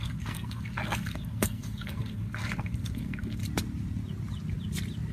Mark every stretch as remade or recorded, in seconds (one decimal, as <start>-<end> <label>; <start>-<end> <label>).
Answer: 0.0-3.4 remade; 3.4-5.1 recorded